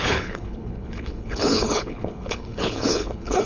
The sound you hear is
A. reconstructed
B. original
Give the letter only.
A